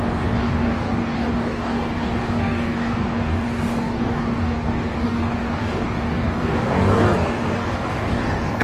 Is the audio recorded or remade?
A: remade